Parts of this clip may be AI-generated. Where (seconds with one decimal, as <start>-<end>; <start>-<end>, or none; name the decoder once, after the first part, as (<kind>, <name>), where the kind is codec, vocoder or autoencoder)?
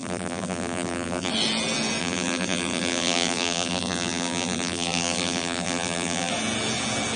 0.0-1.3 (vocoder, BigVGAN v2); 2.0-6.3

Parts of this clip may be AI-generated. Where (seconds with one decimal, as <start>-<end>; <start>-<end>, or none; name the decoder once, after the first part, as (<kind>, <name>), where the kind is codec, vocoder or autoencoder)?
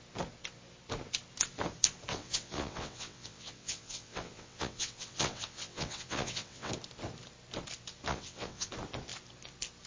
2.1-6.7 (vocoder, WaveNeXt); 8.1-8.7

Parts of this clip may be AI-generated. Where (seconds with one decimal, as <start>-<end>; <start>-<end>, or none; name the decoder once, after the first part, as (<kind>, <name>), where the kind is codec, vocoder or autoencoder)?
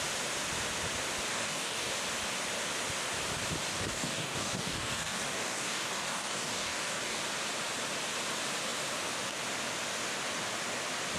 1.3-1.9 (codec, DAC); 3.7-7.2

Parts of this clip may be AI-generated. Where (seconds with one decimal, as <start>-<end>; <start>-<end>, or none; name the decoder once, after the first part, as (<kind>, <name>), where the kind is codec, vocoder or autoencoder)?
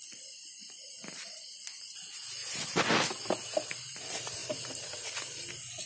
0.0-2.2 (vocoder, BigVGAN v2); 3.7-4.4; 5.5-5.9